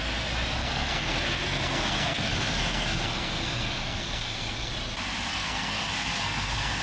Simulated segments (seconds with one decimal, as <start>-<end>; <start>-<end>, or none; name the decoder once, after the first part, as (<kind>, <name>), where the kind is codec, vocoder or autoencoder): 0.6-4.7 (codec, SNAC); 5.3-6.8